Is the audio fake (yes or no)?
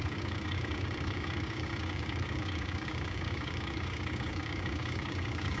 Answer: yes